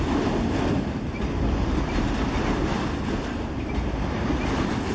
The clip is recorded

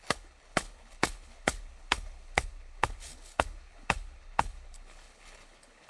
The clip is remade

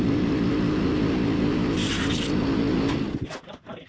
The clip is recorded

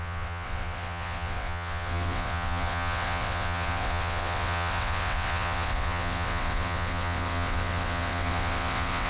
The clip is remade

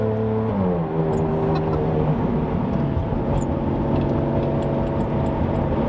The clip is recorded